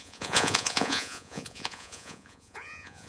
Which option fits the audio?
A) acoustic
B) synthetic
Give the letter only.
B